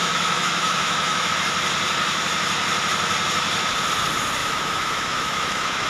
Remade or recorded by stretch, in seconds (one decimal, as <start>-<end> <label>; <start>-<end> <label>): 0.0-1.3 remade; 1.3-4.4 recorded; 4.4-5.9 remade